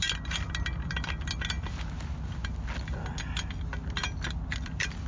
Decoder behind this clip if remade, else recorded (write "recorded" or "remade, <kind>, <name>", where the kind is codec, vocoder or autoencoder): recorded